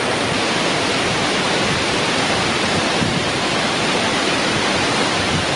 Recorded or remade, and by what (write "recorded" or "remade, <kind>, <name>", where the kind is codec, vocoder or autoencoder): remade, vocoder, BigVGAN v2